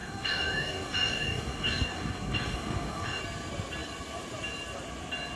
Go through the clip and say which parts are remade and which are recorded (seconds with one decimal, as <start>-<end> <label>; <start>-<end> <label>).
0.0-3.2 remade; 3.2-5.4 recorded